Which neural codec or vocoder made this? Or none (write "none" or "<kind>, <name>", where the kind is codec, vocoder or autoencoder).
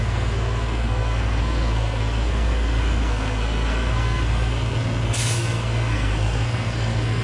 codec, SNAC